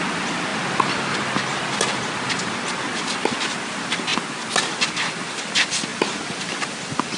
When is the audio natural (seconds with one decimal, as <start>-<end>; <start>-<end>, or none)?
0.0-7.2